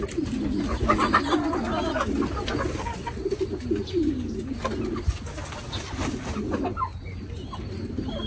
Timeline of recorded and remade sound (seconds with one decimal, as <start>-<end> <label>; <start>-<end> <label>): 0.0-8.3 recorded